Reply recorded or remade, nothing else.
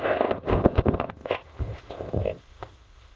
remade